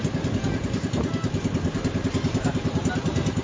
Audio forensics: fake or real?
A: real